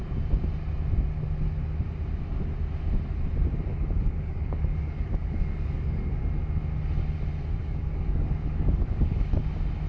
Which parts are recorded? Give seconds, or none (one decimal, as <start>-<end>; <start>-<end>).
0.0-3.7; 6.2-7.6; 9.4-9.9